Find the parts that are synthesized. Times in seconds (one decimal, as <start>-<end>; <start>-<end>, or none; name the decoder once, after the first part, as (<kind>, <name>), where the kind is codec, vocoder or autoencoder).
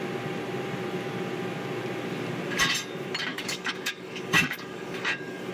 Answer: 3.3-5.5 (codec, DAC)